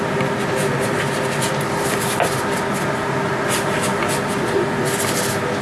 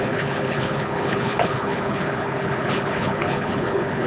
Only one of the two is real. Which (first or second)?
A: first